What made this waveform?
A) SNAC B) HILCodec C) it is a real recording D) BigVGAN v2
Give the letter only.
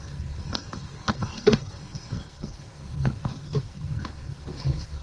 A